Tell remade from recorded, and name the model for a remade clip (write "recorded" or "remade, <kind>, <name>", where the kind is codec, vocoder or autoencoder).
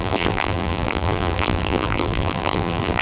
remade, vocoder, BigVGAN v2